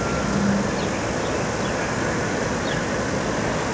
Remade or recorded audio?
recorded